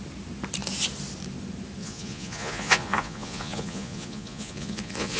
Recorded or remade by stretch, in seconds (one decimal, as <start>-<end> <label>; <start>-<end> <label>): 0.0-1.8 recorded; 1.8-5.2 remade